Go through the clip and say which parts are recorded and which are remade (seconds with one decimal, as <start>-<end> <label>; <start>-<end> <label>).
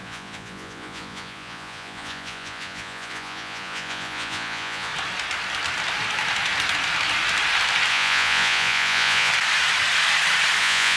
0.0-4.9 remade; 4.9-7.9 recorded; 7.9-9.3 remade; 9.3-10.6 recorded; 10.6-11.0 remade